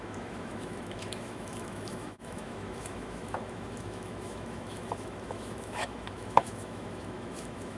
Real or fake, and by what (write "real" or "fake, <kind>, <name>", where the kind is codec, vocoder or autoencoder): fake, autoencoder, DAC-VAE